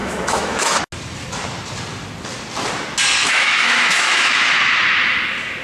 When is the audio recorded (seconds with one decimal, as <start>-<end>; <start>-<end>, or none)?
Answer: 0.8-3.2; 4.5-5.6